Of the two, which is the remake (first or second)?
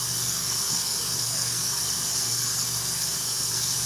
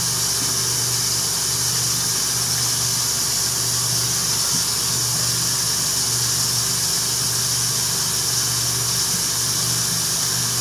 first